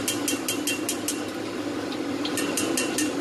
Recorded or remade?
recorded